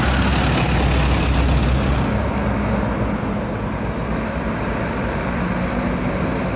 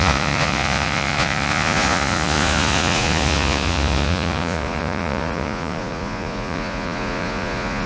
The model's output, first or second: second